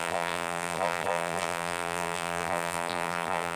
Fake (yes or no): yes